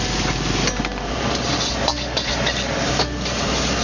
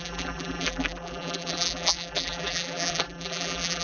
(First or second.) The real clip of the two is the first